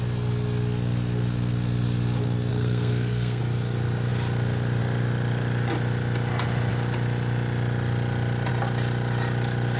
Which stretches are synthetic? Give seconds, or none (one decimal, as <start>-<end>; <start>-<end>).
2.5-3.4